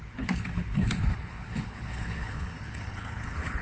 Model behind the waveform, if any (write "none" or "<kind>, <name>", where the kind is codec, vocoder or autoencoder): codec, HILCodec